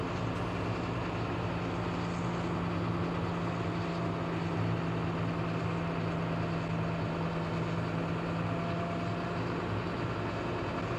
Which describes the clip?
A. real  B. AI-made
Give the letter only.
A